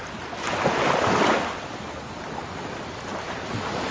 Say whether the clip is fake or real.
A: real